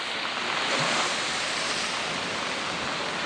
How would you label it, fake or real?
real